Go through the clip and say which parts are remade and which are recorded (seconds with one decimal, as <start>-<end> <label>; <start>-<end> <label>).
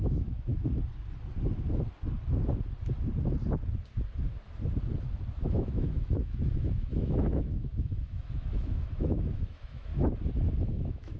0.0-0.5 remade; 0.5-5.3 recorded; 5.3-9.9 remade; 9.9-10.7 recorded; 10.7-11.2 remade